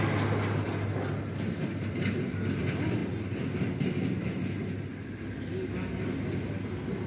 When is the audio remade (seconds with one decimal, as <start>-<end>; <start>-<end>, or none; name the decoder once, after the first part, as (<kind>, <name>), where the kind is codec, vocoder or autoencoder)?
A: none